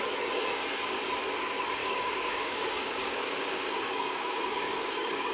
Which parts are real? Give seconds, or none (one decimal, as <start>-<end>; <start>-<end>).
0.0-1.8